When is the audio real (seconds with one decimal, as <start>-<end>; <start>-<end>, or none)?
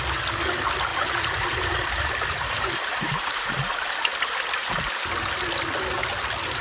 0.0-0.9; 4.9-6.6